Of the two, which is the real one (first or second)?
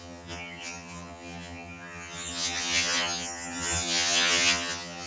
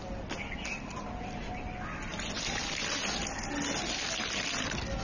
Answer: second